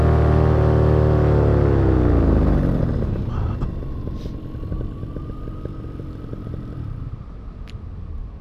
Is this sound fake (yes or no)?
no